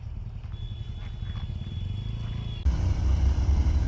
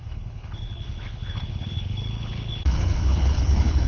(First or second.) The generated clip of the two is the second